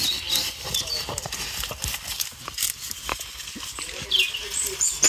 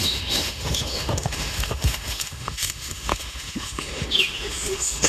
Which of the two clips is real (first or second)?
first